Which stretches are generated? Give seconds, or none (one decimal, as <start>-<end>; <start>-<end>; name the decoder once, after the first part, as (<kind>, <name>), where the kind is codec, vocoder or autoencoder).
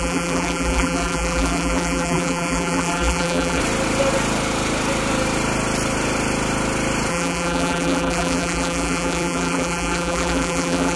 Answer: 0.0-3.6 (vocoder, BigVGAN v2); 7.1-11.0